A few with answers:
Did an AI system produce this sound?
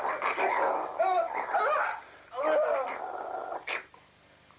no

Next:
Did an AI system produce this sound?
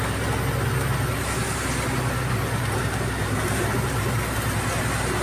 no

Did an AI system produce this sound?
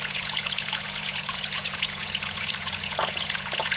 yes